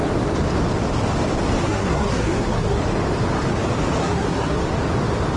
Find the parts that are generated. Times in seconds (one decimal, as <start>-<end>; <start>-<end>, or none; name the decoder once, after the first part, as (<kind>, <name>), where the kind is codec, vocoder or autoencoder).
1.6-2.8 (codec, SNAC); 4.0-4.6